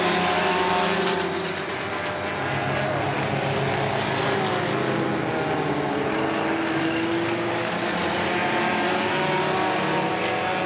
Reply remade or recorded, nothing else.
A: recorded